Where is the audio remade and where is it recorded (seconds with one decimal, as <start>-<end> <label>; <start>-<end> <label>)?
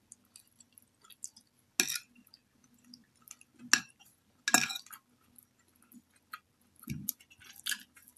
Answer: 0.0-8.2 recorded